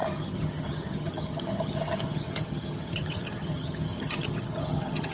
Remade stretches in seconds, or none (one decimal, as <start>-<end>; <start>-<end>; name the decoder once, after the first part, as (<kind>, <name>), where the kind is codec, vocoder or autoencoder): 0.0-5.1 (vocoder, HiFi-GAN)

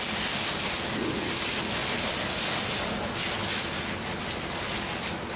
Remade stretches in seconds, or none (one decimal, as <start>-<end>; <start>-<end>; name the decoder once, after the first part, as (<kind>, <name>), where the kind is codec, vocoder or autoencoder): none